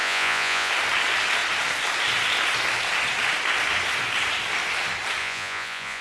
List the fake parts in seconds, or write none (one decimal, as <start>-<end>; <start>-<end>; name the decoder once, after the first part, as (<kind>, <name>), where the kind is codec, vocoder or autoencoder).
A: 0.0-0.7 (vocoder, Vocos); 5.2-6.0